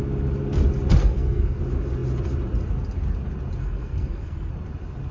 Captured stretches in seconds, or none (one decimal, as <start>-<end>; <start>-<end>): 0.0-1.0; 1.6-3.6; 4.5-5.1